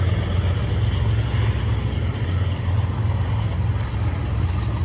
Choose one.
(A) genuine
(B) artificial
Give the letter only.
A